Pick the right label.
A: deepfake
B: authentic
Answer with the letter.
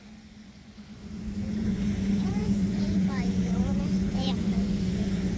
A